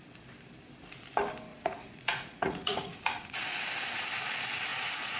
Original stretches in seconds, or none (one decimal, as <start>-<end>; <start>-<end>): 0.0-1.5; 3.6-4.7